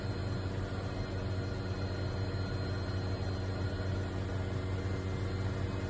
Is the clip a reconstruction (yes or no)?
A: no